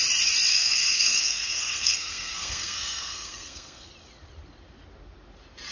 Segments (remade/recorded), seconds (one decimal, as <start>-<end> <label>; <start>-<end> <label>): 0.0-0.5 recorded; 0.5-3.9 remade; 3.9-5.7 recorded